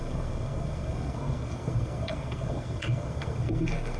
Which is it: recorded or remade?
remade